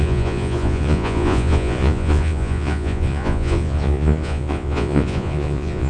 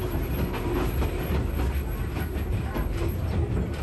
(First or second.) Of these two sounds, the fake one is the first